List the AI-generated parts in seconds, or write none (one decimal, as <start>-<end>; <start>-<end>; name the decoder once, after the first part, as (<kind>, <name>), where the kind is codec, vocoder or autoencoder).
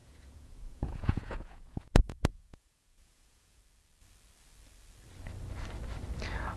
0.0-3.6 (vocoder, Vocos)